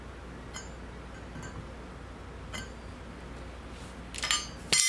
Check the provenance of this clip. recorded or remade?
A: recorded